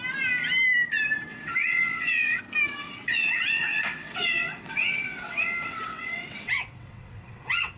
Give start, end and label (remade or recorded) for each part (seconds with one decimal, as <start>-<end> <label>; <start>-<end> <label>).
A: 0.0-1.3 recorded; 1.3-2.4 remade; 2.4-2.8 recorded; 2.8-7.8 remade